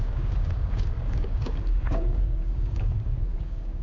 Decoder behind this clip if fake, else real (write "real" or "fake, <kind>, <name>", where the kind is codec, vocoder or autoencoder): fake, codec, DAC